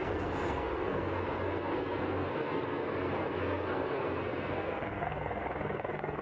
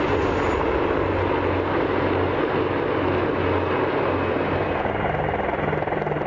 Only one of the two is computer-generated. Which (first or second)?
first